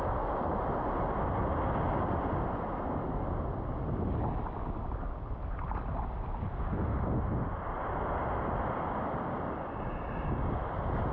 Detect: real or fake real